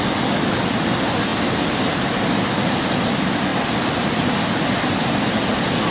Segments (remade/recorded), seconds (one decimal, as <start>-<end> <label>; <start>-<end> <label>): 0.0-5.9 recorded